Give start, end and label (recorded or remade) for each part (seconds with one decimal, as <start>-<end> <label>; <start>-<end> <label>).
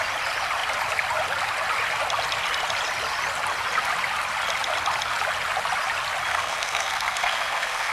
0.0-6.3 recorded; 6.3-7.9 remade